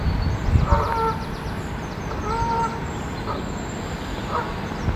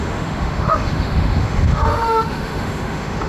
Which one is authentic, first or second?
first